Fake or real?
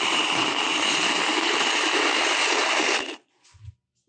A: real